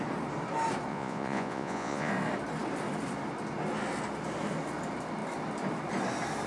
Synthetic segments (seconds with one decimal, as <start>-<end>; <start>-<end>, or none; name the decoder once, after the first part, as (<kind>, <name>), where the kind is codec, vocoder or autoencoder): 0.9-2.1 (vocoder, Vocos)